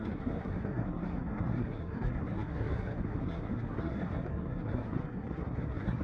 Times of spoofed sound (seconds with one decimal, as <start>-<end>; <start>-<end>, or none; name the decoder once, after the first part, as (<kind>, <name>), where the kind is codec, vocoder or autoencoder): 0.0-6.0 (codec, SNAC)